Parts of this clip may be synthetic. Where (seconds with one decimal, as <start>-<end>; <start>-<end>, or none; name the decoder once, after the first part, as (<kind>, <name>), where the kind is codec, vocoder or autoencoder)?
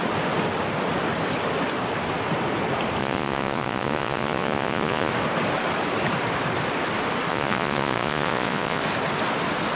3.0-5.1 (vocoder, Vocos); 7.3-8.8